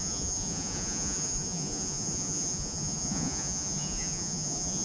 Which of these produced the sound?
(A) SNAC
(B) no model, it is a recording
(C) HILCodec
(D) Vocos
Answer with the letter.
D